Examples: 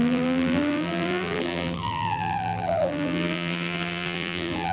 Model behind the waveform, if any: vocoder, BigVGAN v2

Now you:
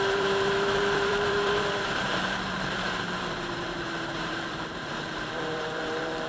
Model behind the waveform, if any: vocoder, BigVGAN v2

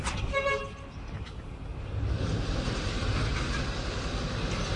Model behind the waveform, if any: none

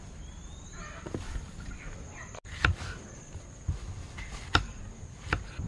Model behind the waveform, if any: none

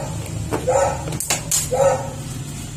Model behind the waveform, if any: none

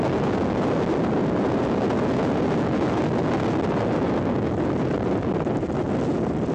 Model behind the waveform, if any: none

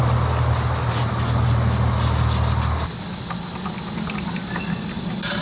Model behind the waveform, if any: none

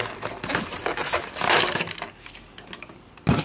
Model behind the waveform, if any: none